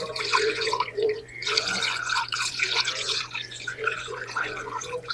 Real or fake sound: fake